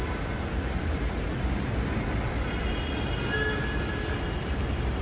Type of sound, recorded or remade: recorded